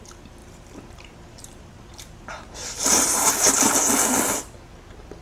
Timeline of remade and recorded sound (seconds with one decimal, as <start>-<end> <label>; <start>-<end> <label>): 0.0-0.4 recorded; 0.4-3.5 remade; 3.5-5.2 recorded